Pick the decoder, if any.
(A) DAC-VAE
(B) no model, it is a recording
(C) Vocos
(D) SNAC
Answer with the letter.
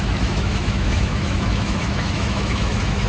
A